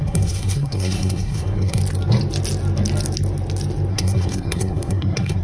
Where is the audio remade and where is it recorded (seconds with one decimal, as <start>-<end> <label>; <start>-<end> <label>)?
0.0-1.8 remade; 1.8-3.9 recorded; 3.9-5.4 remade